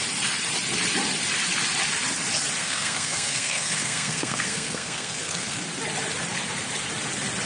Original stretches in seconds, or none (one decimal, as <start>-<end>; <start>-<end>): 0.0-2.6; 5.6-7.5